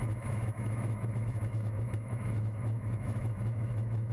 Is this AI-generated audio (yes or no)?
yes